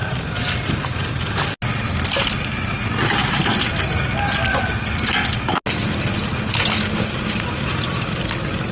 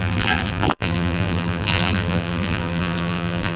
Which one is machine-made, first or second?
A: second